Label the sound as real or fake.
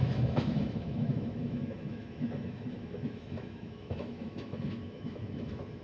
fake